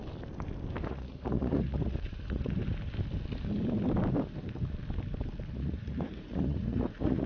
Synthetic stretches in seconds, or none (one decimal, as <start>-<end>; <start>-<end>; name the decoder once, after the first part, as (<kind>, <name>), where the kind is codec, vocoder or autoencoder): 0.9-2.6 (vocoder, Vocos); 5.5-7.3

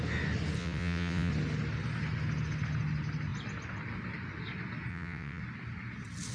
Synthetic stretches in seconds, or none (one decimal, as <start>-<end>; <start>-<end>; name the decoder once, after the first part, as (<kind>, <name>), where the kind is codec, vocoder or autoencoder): 0.6-1.3 (vocoder, WaveNeXt); 4.9-5.4

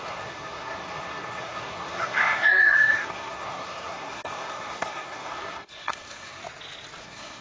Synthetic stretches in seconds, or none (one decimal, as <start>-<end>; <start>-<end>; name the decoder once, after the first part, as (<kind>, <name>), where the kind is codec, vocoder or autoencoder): 0.0-6.4 (codec, SNAC); 7.0-7.4

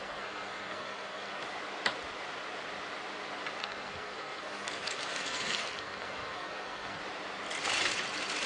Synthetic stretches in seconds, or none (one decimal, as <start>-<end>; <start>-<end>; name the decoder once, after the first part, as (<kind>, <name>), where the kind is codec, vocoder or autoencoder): 0.0-1.4 (codec, SNAC); 3.6-7.0

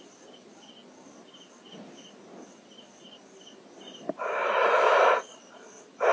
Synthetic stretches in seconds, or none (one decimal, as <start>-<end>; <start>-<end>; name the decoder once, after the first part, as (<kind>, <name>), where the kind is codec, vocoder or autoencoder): none